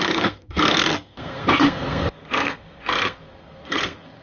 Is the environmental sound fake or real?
fake